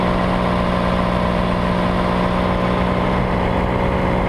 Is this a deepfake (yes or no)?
no